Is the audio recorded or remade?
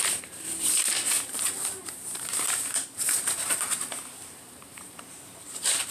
remade